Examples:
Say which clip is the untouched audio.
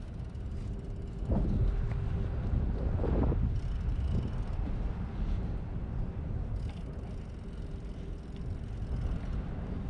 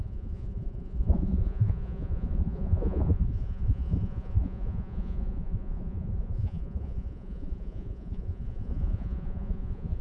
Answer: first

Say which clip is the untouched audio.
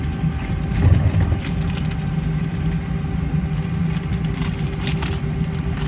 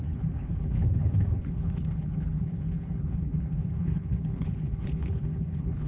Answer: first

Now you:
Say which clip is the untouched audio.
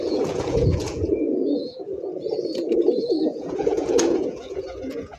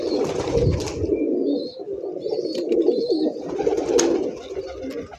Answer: second